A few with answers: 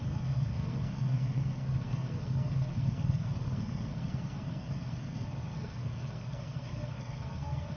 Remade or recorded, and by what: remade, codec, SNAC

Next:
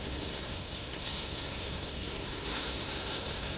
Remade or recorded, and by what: remade, codec, SNAC